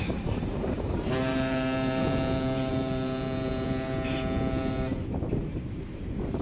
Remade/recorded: remade